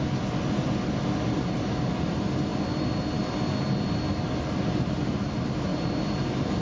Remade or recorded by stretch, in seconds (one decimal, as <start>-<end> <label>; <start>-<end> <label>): 0.0-6.6 recorded